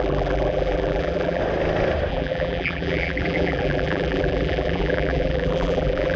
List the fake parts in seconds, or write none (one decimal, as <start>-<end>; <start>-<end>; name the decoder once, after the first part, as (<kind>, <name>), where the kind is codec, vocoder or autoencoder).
0.0-1.4 (vocoder, BigVGAN v2); 2.1-6.2